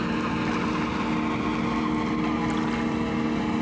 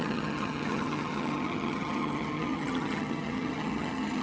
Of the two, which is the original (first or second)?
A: first